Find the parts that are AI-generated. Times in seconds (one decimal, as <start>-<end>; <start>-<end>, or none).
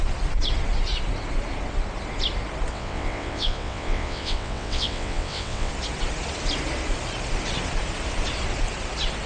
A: 2.7-5.7